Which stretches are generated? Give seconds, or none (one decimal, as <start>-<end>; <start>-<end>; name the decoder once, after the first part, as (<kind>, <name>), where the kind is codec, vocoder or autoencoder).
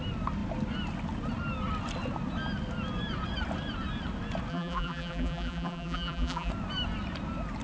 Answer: 4.5-6.5 (vocoder, BigVGAN v2)